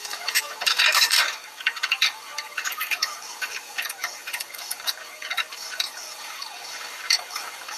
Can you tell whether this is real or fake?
fake